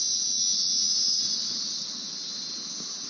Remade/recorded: recorded